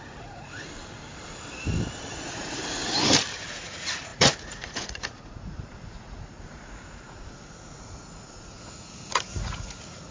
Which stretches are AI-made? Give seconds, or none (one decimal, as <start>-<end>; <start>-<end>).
0.0-0.7; 2.1-2.8; 3.5-10.1